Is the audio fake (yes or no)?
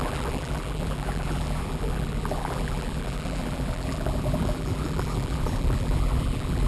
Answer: yes